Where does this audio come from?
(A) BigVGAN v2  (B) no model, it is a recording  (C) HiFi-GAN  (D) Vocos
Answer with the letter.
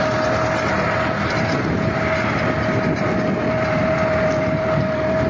B